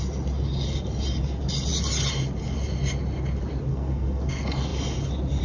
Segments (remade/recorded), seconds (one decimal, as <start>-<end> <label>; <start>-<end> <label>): 0.0-3.7 recorded; 3.7-4.3 remade; 4.3-5.4 recorded